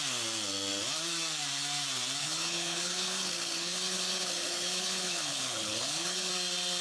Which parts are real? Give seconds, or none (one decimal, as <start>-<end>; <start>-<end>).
0.0-2.2; 6.3-6.8

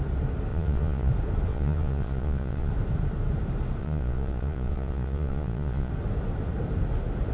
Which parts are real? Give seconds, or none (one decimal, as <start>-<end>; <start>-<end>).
0.0-0.5; 1.1-1.5; 2.7-3.8; 5.9-7.3

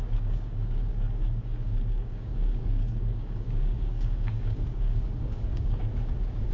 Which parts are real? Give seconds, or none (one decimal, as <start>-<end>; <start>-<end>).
none

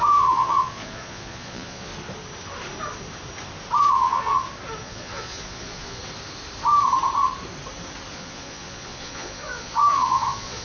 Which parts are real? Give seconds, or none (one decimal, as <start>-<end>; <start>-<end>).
1.9-3.8; 4.3-4.8; 6.0-8.1

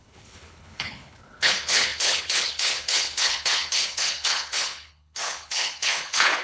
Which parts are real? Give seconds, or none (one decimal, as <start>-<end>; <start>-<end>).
none

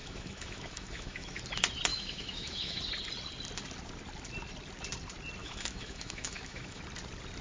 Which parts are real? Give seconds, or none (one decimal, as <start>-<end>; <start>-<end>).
1.4-1.9; 2.8-5.4; 6.8-7.4

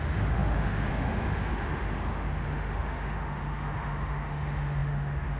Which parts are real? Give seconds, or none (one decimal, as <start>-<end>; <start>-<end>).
none

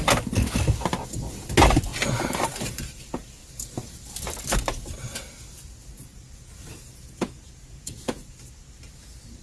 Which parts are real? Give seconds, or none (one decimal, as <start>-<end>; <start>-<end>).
0.0-6.9; 8.2-9.4